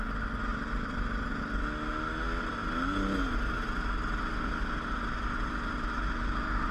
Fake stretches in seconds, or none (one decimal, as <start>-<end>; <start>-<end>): 0.5-1.4